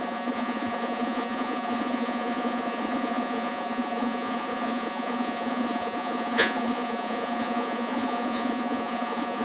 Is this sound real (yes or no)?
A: no